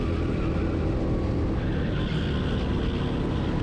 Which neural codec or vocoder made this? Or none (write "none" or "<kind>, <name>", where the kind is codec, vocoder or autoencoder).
none